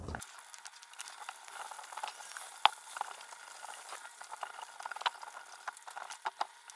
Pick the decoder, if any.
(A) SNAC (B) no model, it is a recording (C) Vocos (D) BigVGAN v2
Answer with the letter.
B